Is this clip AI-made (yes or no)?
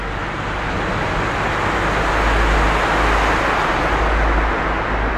no